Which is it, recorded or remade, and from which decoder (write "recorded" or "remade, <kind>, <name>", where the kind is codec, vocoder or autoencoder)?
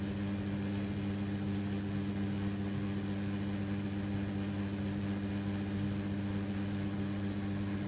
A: recorded